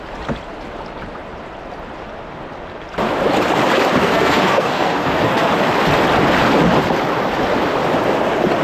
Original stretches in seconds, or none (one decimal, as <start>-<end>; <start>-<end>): 0.0-4.0; 5.5-8.6